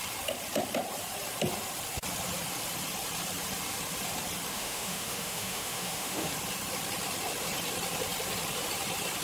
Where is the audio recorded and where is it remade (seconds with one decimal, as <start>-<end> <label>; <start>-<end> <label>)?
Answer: 0.0-4.5 recorded; 4.5-6.3 remade; 6.3-9.2 recorded